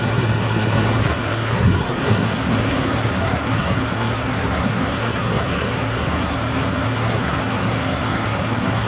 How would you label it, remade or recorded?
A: remade